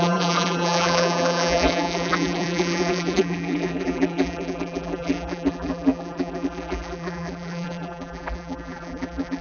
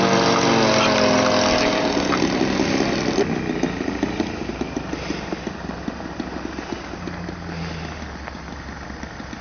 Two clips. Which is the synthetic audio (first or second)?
first